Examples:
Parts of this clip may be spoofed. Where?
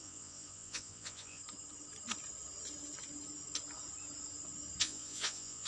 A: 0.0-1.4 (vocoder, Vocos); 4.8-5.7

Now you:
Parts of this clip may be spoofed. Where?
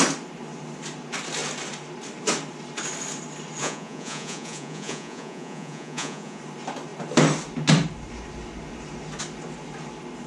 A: 3.6-6.4 (vocoder, Vocos)